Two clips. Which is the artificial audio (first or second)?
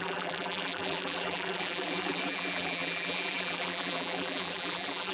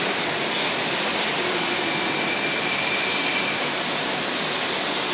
first